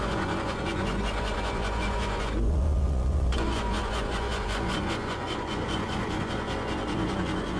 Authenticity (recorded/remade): remade